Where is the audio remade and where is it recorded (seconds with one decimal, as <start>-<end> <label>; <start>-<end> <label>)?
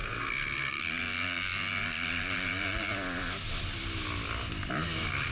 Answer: 0.0-0.8 remade; 0.8-5.3 recorded